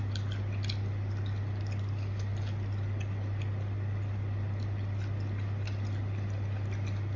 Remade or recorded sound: recorded